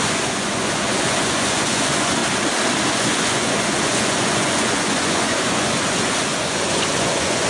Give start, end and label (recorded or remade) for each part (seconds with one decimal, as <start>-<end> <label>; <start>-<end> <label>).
0.0-2.2 remade; 2.2-2.9 recorded; 2.9-7.5 remade